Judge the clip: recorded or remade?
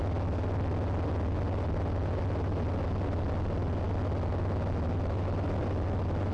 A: recorded